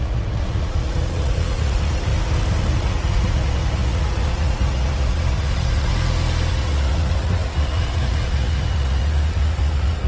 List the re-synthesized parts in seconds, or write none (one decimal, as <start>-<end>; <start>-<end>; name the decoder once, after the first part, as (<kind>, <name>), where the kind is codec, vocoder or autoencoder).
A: 0.0-2.1 (vocoder, Vocos); 2.7-5.9; 6.5-10.1